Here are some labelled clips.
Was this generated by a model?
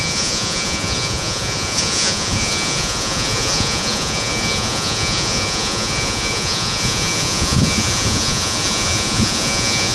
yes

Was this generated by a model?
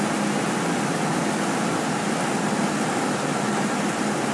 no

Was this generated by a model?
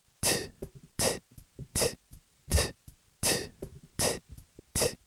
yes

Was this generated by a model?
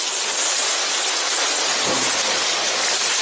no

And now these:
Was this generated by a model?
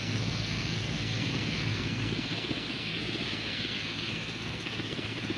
yes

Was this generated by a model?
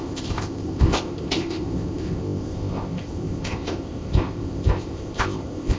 yes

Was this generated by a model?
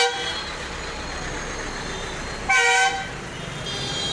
no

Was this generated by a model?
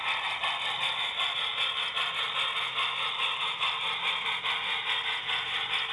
no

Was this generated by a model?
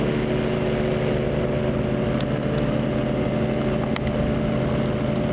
no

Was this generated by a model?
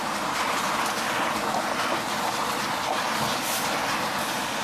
no